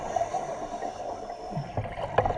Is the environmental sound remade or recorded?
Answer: recorded